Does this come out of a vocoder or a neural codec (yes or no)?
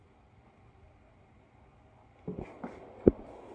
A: no